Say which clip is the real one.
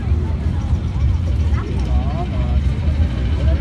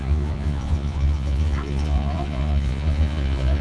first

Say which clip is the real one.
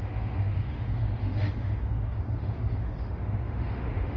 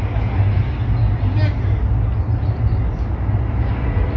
second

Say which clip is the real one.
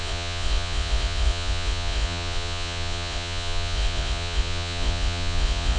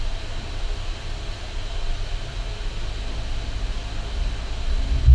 second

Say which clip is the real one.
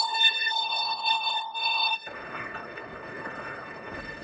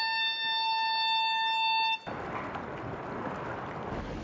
second